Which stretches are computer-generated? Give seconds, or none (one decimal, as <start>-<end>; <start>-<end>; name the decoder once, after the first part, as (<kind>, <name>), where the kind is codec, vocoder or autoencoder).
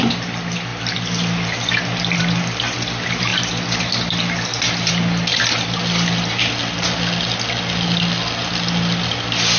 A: none